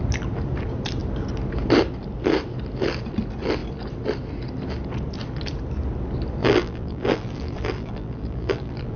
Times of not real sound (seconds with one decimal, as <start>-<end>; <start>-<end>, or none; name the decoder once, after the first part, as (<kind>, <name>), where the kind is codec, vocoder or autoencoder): 6.4-9.0 (vocoder, BigVGAN v2)